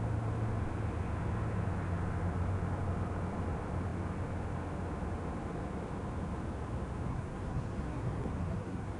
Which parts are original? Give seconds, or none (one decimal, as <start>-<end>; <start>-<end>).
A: 0.0-7.1